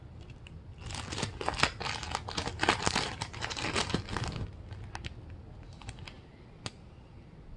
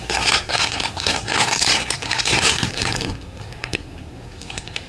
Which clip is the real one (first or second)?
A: first